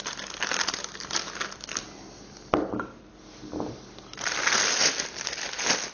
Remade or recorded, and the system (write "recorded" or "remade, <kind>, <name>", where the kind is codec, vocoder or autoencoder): recorded